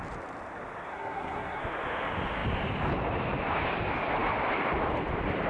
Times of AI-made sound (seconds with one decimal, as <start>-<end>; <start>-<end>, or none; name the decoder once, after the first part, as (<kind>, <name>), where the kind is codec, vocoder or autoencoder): 0.9-1.6 (codec, SNAC)